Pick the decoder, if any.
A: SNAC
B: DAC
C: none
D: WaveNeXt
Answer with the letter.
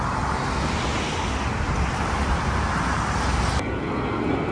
C